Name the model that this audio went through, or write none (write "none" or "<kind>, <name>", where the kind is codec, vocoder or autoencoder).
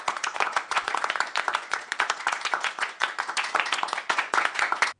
vocoder, Vocos